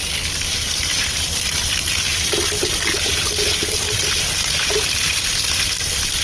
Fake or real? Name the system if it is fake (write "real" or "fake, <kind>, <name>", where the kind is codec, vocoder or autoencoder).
real